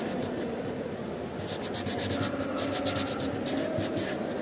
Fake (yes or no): no